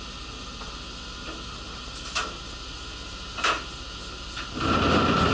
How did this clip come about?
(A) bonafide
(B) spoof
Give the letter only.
A